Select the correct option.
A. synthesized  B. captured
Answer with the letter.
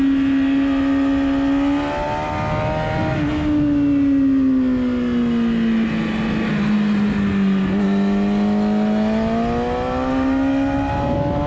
B